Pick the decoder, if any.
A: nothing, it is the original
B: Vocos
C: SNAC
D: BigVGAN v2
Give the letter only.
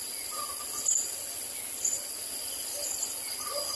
A